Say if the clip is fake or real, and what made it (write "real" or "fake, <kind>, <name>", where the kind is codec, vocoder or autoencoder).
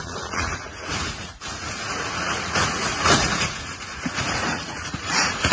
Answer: fake, vocoder, Vocos